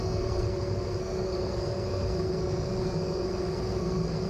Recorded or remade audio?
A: remade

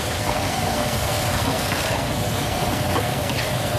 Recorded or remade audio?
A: remade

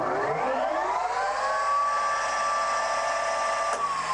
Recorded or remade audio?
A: recorded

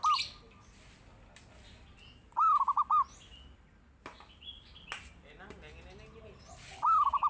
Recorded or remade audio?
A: recorded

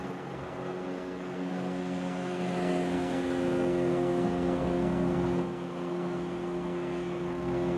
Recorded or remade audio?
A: remade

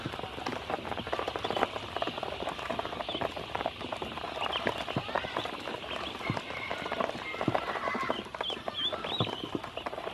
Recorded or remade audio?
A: recorded